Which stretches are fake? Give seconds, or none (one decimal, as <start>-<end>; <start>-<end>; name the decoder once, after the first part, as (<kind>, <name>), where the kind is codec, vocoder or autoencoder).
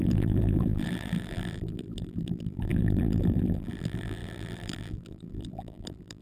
0.0-6.2 (vocoder, BigVGAN v2)